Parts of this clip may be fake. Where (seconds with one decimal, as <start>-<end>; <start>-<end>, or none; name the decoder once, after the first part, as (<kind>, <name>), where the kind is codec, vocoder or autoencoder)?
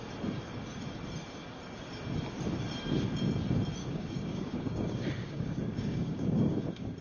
3.8-7.0 (codec, DAC)